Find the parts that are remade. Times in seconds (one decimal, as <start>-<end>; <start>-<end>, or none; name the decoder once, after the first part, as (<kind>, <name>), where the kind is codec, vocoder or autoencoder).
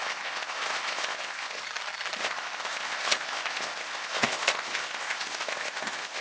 0.0-1.6 (codec, ZipCodec); 2.2-6.2